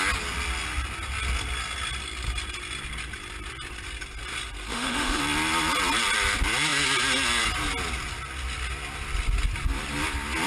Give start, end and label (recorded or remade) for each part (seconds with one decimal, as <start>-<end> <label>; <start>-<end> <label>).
0.0-4.7 recorded; 4.7-5.2 remade; 5.2-10.5 recorded